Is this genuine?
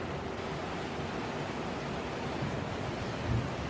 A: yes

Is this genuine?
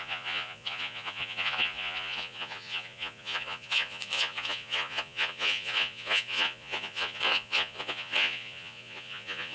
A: no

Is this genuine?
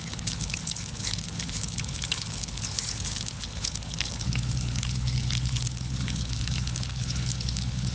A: no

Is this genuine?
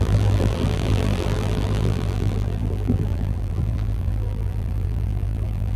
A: no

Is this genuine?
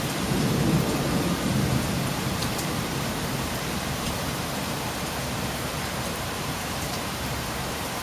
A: no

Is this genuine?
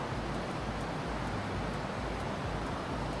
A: yes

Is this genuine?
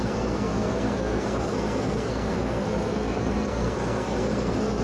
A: no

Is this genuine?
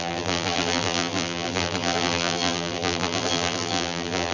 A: no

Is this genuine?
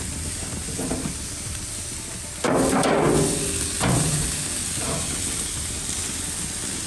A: yes